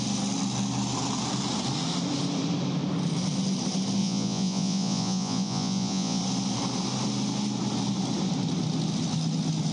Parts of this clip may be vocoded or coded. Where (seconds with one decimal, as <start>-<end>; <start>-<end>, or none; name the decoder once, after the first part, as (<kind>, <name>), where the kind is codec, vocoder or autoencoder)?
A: 4.0-6.2 (vocoder, Vocos)

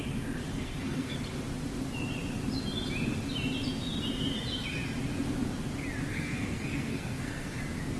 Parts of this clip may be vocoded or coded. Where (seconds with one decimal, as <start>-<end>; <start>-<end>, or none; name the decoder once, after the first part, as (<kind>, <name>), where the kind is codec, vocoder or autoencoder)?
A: 0.5-1.1 (codec, SNAC); 6.1-7.6